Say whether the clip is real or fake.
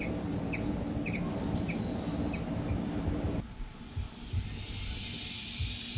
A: real